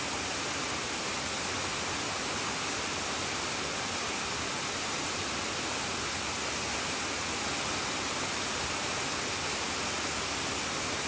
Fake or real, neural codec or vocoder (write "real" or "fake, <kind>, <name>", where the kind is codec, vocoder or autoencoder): real